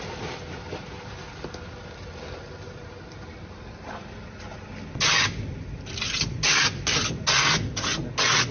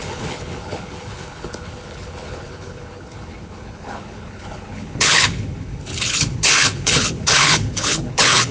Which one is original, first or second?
first